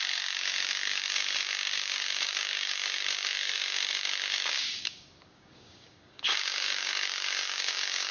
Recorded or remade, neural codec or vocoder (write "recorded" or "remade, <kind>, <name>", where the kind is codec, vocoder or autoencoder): remade, codec, DAC